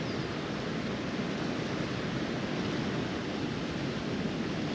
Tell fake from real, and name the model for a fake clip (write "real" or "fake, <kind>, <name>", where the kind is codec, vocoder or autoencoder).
real